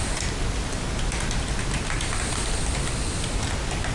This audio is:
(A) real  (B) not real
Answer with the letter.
A